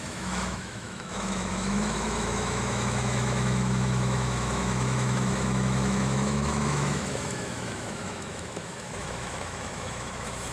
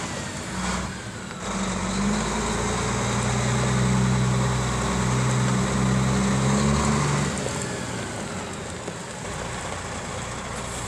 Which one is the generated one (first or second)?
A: first